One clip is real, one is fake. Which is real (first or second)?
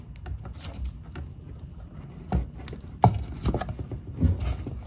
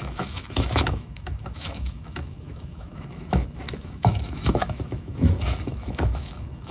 first